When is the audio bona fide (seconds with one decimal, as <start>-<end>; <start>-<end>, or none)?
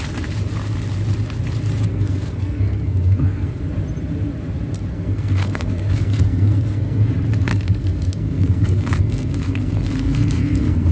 0.0-1.9; 3.6-4.9; 7.1-7.5